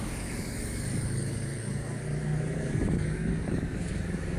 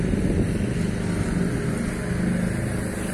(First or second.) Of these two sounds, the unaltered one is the second